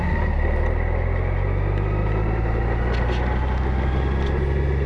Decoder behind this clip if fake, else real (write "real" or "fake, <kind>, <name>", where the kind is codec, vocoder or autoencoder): real